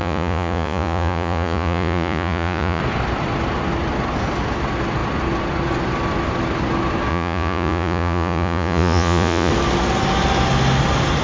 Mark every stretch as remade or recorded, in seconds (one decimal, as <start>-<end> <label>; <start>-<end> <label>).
0.0-2.8 remade; 2.8-7.1 recorded; 7.1-9.5 remade; 9.5-11.2 recorded